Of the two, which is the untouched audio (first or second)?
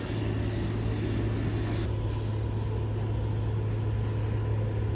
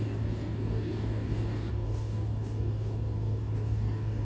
first